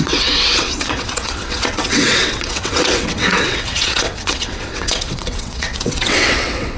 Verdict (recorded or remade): remade